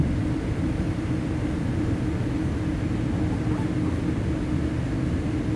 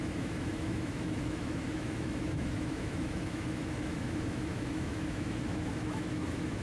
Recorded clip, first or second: first